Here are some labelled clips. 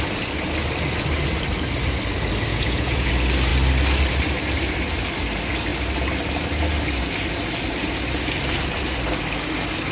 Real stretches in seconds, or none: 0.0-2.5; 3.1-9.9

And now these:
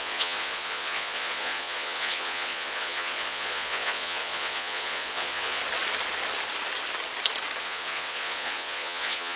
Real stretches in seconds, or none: 5.6-7.6

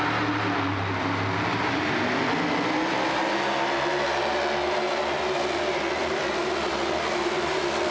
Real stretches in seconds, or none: 0.0-7.9

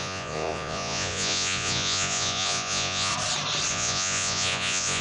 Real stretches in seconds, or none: 3.1-3.7

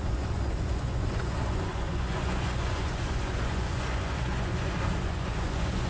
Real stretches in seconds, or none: none

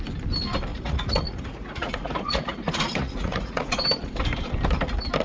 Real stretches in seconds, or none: 0.0-0.7; 3.8-5.2

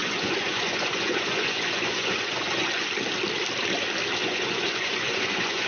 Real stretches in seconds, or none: 2.9-4.2

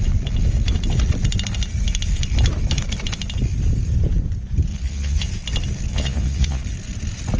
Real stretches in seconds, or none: 0.0-4.7; 5.3-5.9; 6.6-7.4